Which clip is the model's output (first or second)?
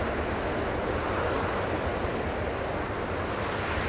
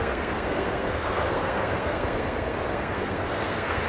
second